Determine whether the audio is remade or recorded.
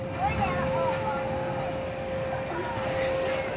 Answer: recorded